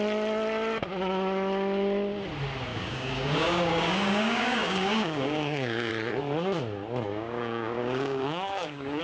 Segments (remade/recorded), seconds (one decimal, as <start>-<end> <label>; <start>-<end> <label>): 0.0-2.7 recorded; 2.7-5.9 remade; 5.9-7.1 recorded; 7.1-9.0 remade